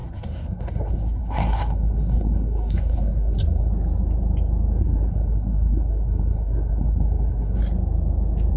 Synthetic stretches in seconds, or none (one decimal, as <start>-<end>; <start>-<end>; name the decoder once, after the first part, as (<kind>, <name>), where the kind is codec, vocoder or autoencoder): 0.0-3.7 (codec, SNAC); 4.8-7.6